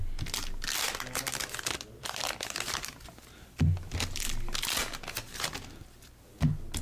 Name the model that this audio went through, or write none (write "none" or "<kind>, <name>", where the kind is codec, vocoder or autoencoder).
none